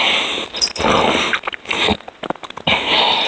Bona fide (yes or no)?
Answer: yes